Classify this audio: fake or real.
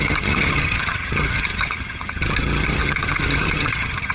fake